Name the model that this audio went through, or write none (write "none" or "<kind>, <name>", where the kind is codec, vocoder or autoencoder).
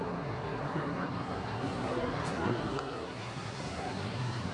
codec, SNAC